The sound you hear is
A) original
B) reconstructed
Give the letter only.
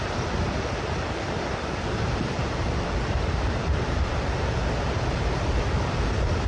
B